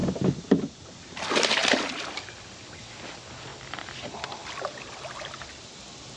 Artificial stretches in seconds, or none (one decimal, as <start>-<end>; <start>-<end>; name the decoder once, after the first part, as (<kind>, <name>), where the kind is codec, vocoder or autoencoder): 1.6-2.6 (vocoder, BigVGAN v2)